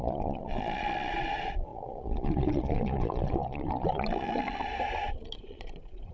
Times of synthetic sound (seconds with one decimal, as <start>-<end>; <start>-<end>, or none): 0.0-6.1